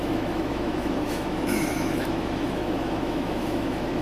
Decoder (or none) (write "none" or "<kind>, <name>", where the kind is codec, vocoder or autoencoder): autoencoder, DAC-VAE